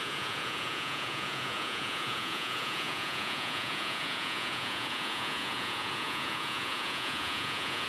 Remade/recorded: remade